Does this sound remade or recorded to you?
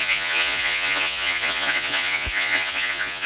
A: remade